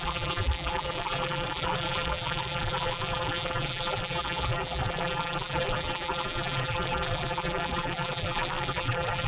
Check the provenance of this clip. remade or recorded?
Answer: remade